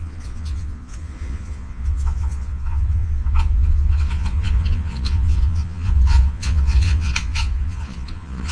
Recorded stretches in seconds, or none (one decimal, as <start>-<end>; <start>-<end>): none